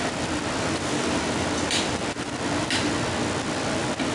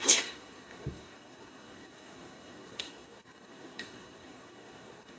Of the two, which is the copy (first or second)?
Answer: second